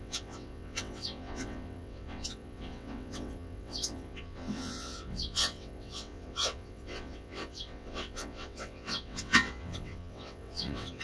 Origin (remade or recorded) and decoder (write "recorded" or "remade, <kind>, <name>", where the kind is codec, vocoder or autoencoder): remade, vocoder, WaveNeXt